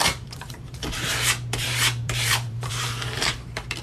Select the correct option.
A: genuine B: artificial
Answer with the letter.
B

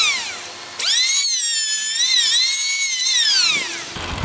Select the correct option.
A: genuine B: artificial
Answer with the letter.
A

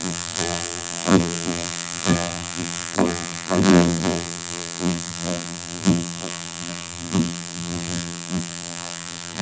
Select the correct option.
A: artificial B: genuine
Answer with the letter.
A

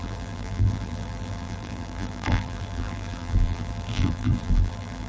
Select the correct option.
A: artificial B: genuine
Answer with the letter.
A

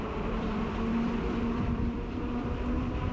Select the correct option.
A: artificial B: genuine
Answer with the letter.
A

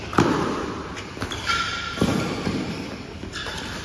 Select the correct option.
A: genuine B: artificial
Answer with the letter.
A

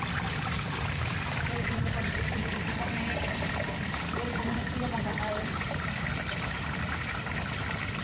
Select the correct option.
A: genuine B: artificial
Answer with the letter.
B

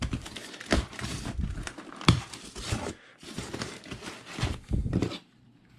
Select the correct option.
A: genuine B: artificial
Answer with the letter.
A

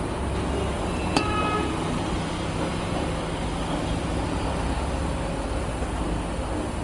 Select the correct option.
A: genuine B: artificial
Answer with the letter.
A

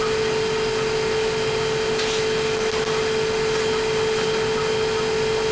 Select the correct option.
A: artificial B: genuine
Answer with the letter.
B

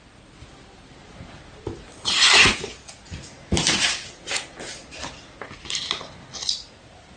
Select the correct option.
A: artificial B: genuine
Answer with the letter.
B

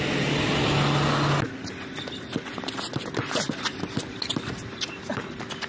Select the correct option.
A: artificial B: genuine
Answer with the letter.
B